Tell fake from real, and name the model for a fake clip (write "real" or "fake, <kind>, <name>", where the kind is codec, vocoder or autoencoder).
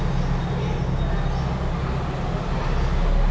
real